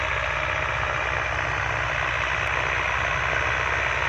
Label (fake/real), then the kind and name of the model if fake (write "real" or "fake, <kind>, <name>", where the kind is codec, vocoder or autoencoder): real